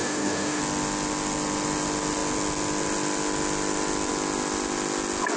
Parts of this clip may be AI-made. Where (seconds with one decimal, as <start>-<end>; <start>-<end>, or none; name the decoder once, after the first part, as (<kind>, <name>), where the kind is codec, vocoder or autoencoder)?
0.0-0.6 (codec, DAC)